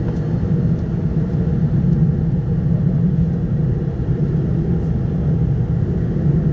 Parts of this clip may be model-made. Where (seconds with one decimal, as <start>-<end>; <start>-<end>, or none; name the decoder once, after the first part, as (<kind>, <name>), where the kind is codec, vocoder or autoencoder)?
1.0-4.3 (vocoder, BigVGAN v2)